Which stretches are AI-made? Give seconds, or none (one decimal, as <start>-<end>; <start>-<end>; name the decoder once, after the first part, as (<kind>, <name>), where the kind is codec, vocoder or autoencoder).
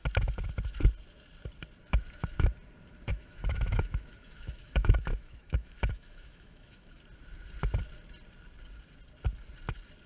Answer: 3.1-7.0 (autoencoder, DAC-VAE)